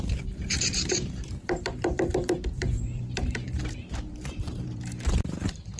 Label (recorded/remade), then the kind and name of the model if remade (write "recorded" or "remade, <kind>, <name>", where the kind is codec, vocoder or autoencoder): remade, vocoder, BigVGAN v2